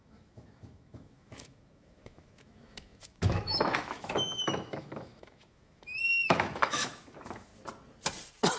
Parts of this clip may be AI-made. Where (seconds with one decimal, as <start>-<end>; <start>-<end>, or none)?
0.0-7.5